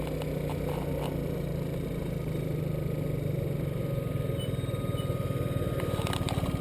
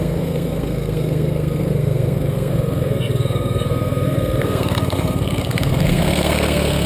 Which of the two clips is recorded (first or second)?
first